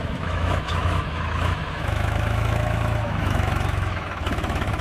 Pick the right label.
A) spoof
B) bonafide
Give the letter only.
A